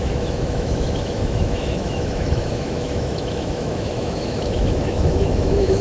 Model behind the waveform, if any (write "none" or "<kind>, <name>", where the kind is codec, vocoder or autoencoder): autoencoder, DAC-VAE